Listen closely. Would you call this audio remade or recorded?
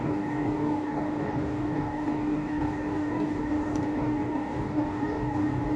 remade